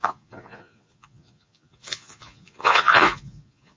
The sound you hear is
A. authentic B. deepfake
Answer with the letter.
B